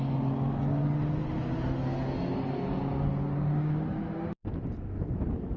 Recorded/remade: recorded